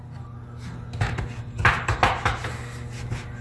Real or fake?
real